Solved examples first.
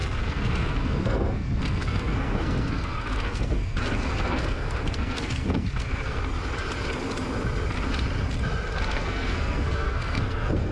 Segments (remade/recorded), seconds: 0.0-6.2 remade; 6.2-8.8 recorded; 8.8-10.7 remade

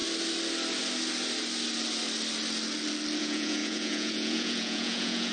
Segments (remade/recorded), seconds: 0.0-3.2 recorded; 3.2-5.3 remade

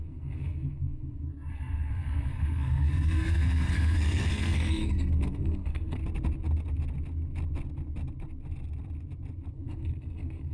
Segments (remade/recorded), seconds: 0.0-6.0 remade; 6.0-9.5 recorded; 9.5-10.5 remade

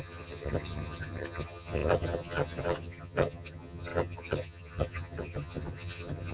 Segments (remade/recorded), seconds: 0.0-6.3 remade

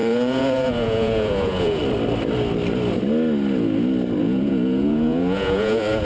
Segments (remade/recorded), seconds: 0.0-1.8 remade; 1.8-4.2 recorded; 4.2-6.1 remade

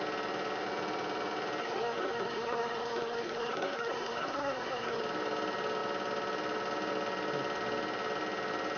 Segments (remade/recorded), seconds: 0.0-1.6 recorded; 1.6-5.0 remade; 5.0-8.8 recorded